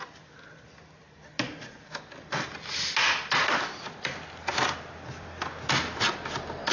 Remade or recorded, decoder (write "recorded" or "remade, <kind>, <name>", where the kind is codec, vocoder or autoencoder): recorded